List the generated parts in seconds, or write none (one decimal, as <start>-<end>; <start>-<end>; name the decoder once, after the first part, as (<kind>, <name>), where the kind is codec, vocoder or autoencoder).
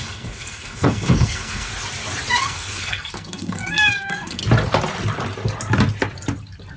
0.0-1.7 (codec, SNAC); 2.4-4.4